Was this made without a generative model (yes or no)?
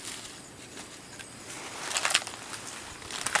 yes